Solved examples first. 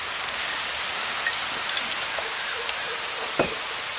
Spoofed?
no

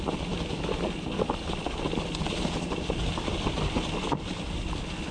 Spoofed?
no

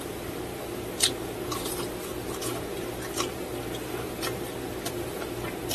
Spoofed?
yes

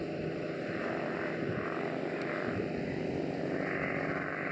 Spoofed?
no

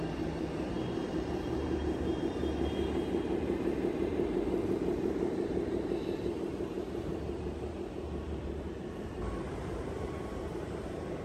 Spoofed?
yes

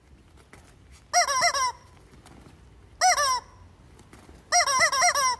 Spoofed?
no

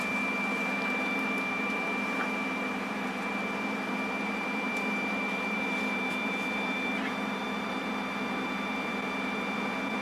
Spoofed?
yes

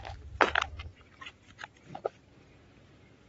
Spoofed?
no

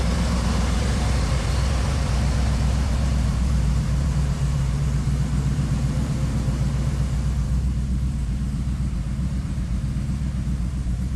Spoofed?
yes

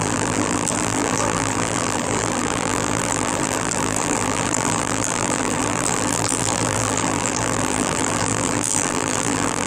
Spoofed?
yes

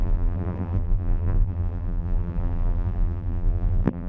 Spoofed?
yes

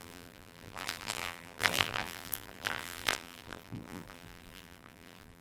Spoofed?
yes